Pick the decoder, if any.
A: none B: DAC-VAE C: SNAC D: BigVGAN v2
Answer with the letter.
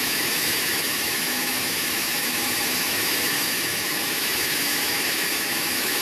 B